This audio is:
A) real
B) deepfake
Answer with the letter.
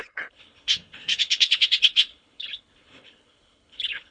B